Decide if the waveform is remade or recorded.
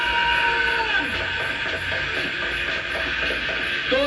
recorded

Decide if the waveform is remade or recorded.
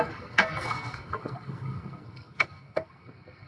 remade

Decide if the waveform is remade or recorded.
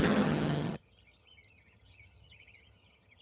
remade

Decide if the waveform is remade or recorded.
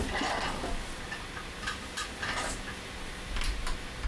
recorded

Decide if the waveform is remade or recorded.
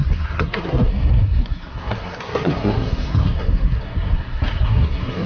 remade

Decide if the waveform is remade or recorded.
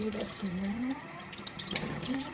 remade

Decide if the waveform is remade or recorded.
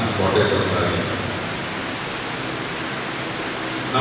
recorded